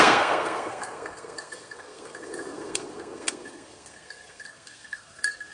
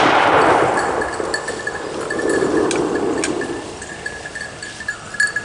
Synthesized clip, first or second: first